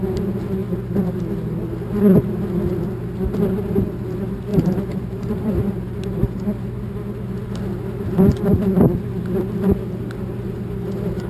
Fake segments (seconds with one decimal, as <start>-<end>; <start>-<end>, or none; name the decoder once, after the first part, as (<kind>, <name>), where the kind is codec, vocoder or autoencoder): 4.5-6.0 (vocoder, BigVGAN v2)